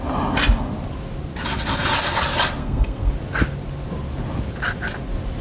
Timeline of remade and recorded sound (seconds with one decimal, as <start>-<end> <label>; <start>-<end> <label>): 0.0-2.6 recorded; 2.6-3.1 remade; 3.1-5.4 recorded

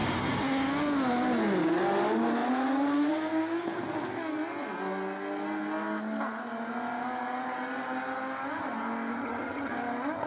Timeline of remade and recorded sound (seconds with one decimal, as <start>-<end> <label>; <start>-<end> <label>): 0.0-9.1 recorded; 9.1-9.7 remade; 9.7-10.3 recorded

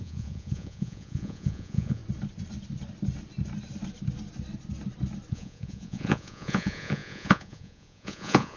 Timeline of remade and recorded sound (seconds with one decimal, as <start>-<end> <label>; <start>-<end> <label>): 0.0-2.0 remade; 2.0-5.3 recorded; 5.3-8.6 remade

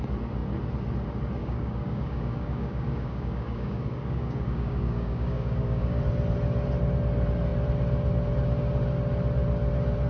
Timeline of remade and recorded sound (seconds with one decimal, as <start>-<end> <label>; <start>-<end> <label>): 0.0-1.4 recorded; 1.4-6.0 remade; 6.0-10.1 recorded